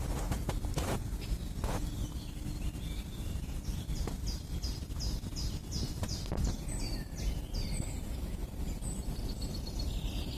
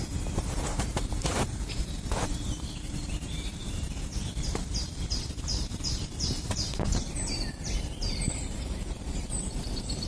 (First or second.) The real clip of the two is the first